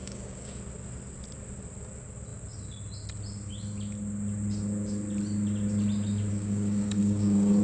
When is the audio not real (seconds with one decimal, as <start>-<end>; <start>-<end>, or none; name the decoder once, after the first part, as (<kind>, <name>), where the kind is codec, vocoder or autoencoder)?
0.0-0.6 (codec, DAC); 6.3-7.6